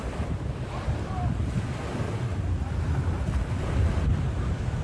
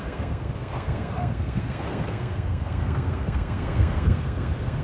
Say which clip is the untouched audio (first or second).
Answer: first